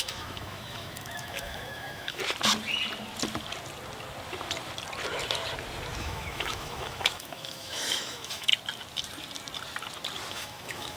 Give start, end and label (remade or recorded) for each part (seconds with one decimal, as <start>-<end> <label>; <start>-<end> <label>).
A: 0.0-2.2 remade; 2.2-6.0 recorded; 6.0-8.5 remade; 8.5-10.3 recorded; 10.3-11.0 remade